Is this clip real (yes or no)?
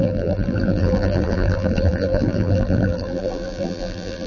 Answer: no